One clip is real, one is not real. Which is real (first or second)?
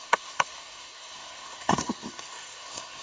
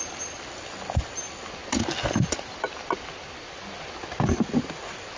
second